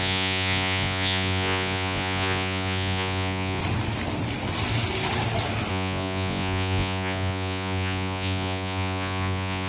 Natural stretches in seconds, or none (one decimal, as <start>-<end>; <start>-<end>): 3.6-5.7